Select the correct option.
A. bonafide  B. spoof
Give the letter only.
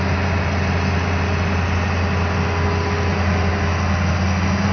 A